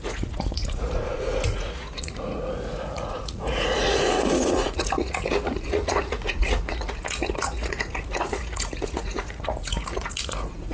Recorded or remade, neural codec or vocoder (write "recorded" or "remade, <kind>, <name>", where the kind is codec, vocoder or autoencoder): remade, vocoder, Vocos